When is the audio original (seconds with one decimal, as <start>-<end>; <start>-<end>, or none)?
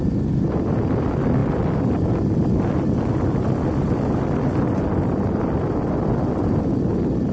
0.0-7.3